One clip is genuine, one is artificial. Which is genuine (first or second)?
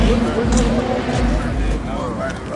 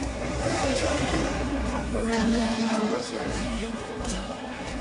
first